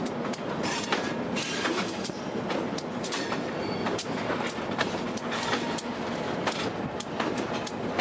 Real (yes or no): yes